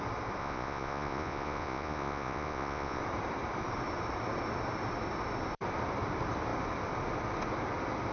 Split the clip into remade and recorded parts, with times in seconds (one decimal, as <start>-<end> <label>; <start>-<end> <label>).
0.0-0.4 recorded; 0.4-3.0 remade; 3.0-8.1 recorded